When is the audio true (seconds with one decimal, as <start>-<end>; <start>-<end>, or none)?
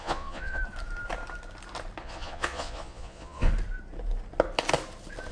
0.6-2.0; 3.5-5.3